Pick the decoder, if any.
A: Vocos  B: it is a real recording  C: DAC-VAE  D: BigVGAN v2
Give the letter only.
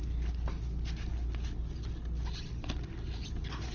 B